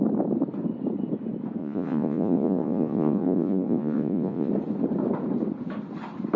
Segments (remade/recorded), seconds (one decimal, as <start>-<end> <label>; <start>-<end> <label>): 0.0-1.6 recorded; 1.6-4.5 remade; 4.5-6.4 recorded